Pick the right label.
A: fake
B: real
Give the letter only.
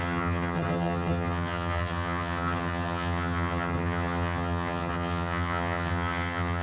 A